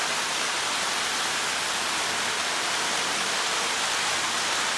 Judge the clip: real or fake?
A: real